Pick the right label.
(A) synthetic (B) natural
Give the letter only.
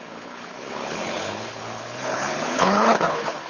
A